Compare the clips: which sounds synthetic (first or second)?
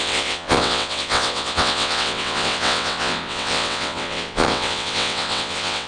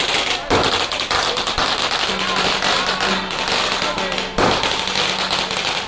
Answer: first